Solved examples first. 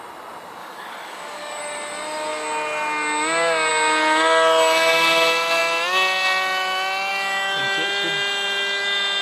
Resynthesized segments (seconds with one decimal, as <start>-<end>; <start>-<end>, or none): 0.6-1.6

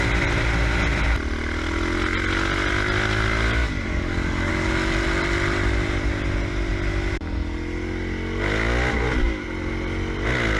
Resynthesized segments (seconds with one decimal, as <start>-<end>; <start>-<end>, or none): 3.6-4.5

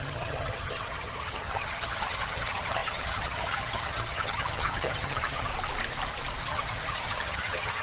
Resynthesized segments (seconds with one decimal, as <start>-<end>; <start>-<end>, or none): 0.0-5.5; 6.4-7.8